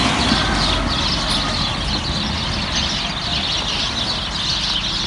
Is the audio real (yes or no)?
yes